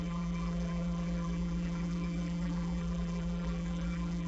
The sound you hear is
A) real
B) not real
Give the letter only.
B